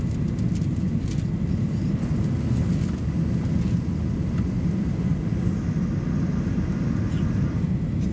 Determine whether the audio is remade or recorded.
recorded